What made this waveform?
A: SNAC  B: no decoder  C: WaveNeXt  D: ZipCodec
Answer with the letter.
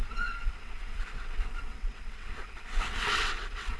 C